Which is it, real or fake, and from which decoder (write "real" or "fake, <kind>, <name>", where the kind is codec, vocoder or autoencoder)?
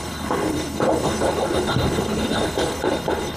fake, codec, HILCodec